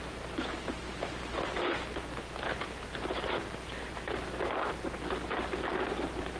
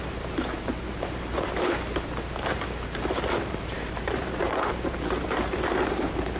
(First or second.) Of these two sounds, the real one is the first